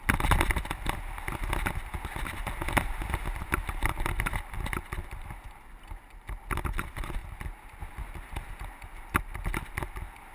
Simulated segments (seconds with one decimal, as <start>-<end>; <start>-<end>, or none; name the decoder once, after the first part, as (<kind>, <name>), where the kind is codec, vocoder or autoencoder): none